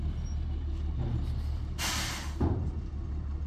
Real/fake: real